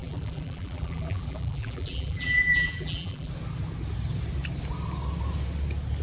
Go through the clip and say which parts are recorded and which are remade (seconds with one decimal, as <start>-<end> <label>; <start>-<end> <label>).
0.0-3.3 remade; 3.3-6.0 recorded